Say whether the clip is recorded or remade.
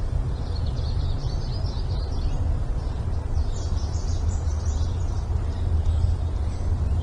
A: remade